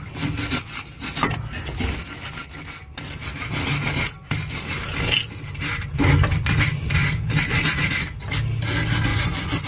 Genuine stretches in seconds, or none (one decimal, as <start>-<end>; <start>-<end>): 0.0-9.1